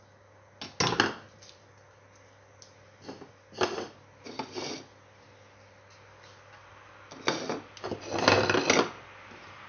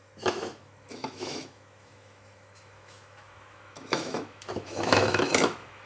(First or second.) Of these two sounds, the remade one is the second